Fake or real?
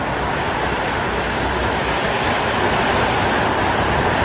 real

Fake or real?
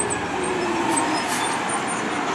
real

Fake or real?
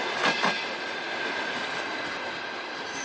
real